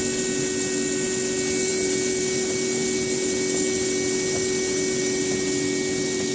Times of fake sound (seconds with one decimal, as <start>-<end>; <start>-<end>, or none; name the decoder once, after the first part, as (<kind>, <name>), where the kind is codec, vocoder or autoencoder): none